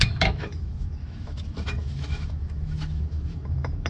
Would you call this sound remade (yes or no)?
yes